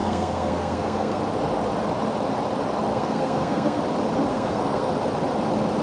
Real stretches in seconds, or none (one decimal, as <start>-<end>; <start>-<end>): 1.2-2.9; 3.8-4.3; 4.9-5.8